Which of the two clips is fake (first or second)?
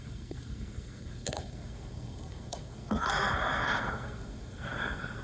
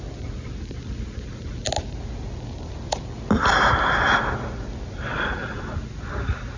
first